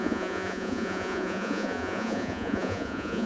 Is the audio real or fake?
fake